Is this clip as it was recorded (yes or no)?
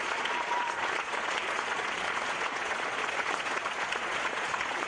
no